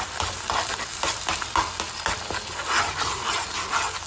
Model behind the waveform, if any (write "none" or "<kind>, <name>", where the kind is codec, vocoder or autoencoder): none